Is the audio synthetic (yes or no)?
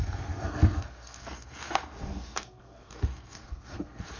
yes